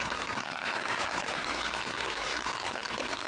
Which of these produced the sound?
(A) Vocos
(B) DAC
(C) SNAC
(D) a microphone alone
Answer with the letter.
C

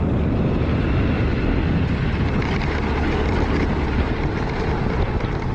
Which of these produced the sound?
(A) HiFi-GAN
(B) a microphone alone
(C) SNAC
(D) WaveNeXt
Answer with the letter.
B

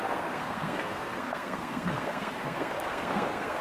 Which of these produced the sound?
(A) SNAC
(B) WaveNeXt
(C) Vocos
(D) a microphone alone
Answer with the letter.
A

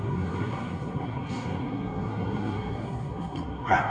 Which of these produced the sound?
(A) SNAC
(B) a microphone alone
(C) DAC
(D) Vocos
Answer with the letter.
A